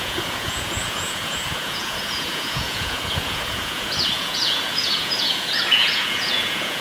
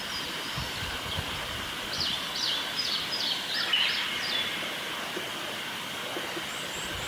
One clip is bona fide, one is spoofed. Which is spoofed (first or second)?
first